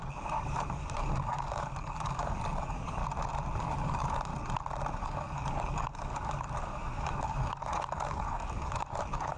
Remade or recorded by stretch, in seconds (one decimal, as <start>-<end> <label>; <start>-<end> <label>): 0.0-3.0 remade; 3.0-3.6 recorded; 3.6-4.3 remade; 4.3-5.0 recorded; 5.0-9.4 remade